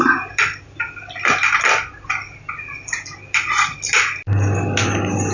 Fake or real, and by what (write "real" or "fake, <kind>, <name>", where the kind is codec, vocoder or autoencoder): real